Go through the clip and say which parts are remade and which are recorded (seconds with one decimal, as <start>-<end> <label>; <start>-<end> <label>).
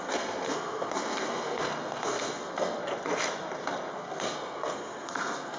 0.0-2.8 remade; 2.8-3.9 recorded; 3.9-5.6 remade